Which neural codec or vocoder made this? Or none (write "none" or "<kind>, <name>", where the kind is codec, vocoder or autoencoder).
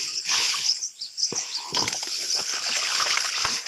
codec, HILCodec